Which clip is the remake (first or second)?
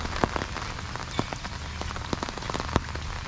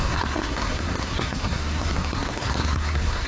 second